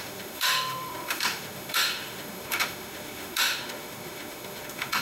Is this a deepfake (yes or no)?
yes